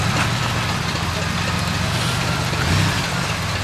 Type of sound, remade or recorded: recorded